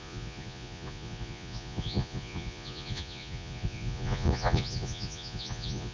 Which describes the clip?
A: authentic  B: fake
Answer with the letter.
B